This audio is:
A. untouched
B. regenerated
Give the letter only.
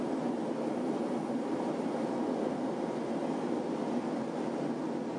A